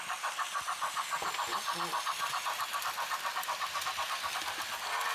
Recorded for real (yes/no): yes